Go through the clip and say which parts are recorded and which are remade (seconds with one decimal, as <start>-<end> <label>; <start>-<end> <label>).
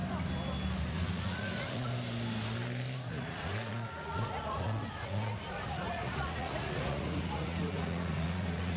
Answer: 0.0-1.1 recorded; 1.1-1.9 remade; 1.9-3.1 recorded; 3.1-8.8 remade